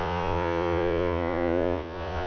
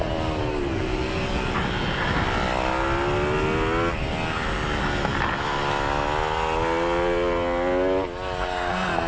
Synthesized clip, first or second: first